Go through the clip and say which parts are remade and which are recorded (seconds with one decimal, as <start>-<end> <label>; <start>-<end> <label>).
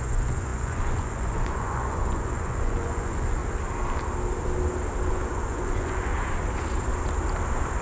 0.0-3.4 remade; 3.4-5.1 recorded; 5.1-6.1 remade; 6.1-7.8 recorded